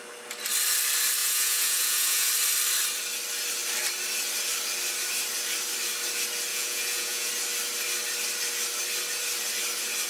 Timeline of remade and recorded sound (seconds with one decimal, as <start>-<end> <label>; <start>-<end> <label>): 0.0-1.2 recorded; 1.2-2.3 remade; 2.3-6.5 recorded; 6.5-7.3 remade; 7.3-10.1 recorded